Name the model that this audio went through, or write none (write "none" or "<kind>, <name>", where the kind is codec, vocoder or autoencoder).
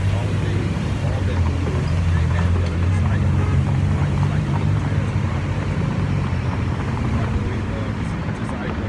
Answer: vocoder, BigVGAN v2